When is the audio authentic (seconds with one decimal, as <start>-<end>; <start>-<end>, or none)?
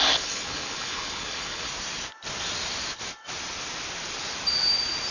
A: 1.7-5.1